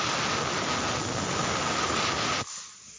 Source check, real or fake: real